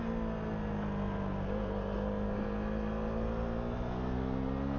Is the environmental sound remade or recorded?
recorded